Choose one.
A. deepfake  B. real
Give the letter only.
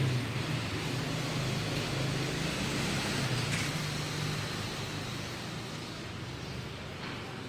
B